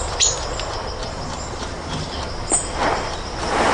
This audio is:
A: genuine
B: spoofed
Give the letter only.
A